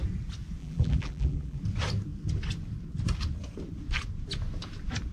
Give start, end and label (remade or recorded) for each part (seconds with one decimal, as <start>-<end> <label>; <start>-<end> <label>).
0.0-0.6 recorded; 0.6-1.6 remade; 1.6-5.1 recorded